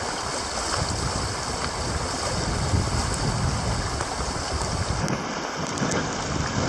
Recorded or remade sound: recorded